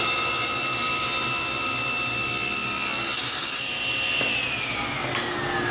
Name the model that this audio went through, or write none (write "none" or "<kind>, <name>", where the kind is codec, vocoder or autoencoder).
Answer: none